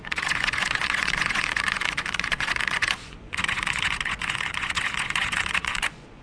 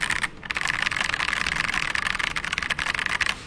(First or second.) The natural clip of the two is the second